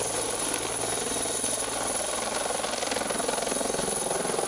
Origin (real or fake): real